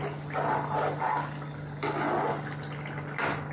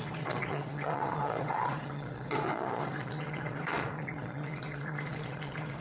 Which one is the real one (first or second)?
first